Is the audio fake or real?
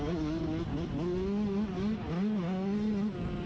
real